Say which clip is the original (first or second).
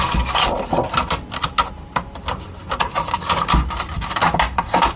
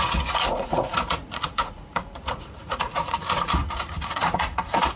first